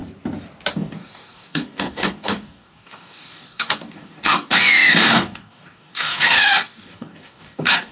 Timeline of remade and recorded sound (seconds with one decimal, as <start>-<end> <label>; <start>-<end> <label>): 0.0-0.7 recorded; 0.7-7.9 remade

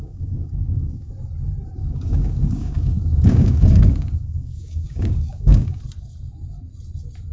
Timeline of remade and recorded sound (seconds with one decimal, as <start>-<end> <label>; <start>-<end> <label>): 0.0-1.1 remade; 1.1-1.8 recorded; 1.8-5.8 remade; 5.8-7.3 recorded

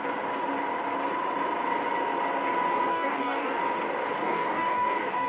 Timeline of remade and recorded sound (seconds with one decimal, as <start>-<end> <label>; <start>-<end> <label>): 0.0-2.9 recorded; 2.9-3.6 remade; 3.6-4.2 recorded; 4.2-5.3 remade

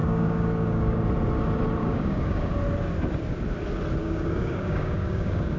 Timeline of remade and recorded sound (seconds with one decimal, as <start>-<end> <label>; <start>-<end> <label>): 0.0-1.0 remade; 1.0-1.8 recorded; 1.8-2.5 remade; 2.5-4.0 recorded; 4.0-5.6 remade

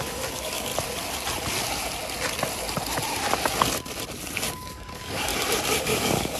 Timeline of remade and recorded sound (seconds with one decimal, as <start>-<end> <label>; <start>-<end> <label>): 0.0-0.7 remade; 0.7-4.5 recorded; 4.5-5.3 remade; 5.3-5.8 recorded; 5.8-6.4 remade

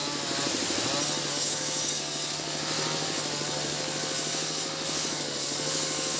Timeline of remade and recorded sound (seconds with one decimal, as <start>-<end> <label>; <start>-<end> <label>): 0.0-1.3 recorded; 1.3-6.2 remade